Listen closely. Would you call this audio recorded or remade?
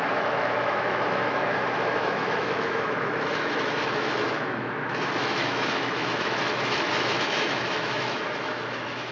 remade